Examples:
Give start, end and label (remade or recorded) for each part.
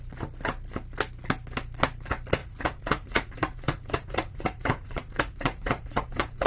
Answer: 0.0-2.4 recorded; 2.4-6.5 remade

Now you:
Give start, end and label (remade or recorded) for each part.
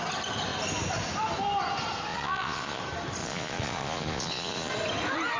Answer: 0.0-2.1 recorded; 2.1-2.8 remade; 2.8-3.2 recorded; 3.2-4.7 remade; 4.7-5.4 recorded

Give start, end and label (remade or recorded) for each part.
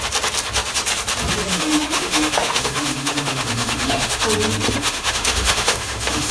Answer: 0.0-1.5 recorded; 1.5-4.2 remade; 4.2-4.8 recorded; 4.8-6.3 remade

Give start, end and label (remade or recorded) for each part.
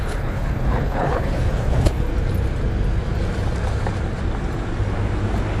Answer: 0.0-2.1 remade; 2.1-5.6 recorded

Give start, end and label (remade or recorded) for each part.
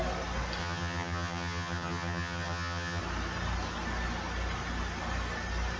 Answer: 0.0-0.6 recorded; 0.6-3.0 remade; 3.0-5.8 recorded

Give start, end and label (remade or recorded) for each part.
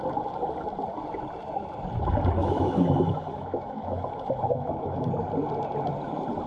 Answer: 0.0-2.4 recorded; 2.4-5.1 remade; 5.1-6.5 recorded